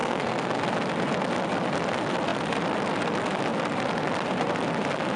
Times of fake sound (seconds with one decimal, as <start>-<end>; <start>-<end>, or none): 0.0-0.6